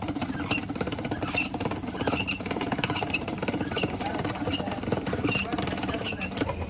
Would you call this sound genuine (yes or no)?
no